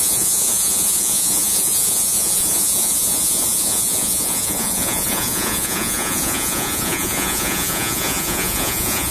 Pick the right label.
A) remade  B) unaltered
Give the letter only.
A